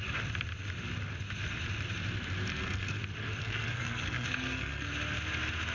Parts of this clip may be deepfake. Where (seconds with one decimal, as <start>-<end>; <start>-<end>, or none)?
2.5-3.0; 3.4-4.9